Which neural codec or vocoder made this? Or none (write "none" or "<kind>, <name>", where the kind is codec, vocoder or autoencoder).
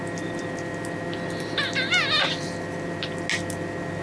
none